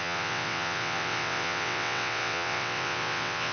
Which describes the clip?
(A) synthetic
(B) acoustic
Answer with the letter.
A